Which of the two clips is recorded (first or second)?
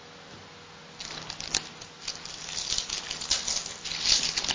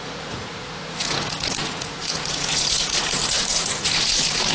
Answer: first